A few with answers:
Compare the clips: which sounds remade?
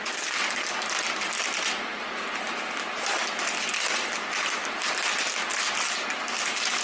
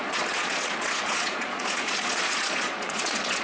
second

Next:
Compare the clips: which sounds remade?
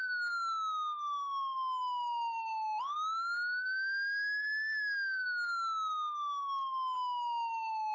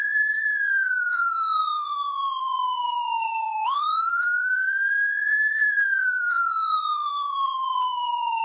second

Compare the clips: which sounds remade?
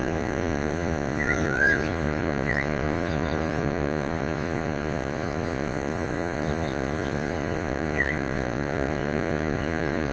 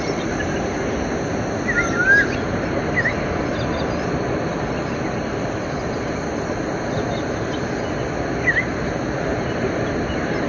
first